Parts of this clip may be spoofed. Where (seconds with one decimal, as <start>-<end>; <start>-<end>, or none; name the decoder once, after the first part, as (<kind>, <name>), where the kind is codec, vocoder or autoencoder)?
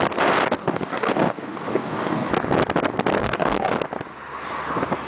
0.6-2.3 (codec, DAC); 3.2-3.7